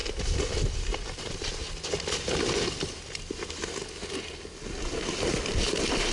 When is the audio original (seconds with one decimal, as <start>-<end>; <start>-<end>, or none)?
0.0-6.1

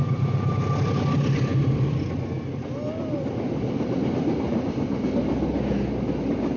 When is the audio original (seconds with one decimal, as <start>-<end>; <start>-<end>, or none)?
0.0-6.6

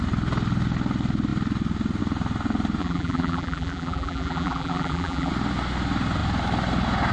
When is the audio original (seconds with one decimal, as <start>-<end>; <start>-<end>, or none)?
0.0-2.8; 5.3-7.1

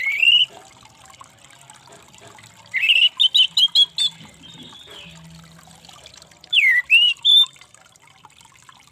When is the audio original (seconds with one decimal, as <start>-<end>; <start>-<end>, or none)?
0.0-4.9; 8.2-8.9

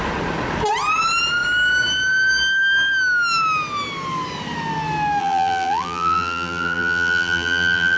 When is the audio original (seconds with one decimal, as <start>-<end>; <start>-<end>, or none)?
0.0-5.2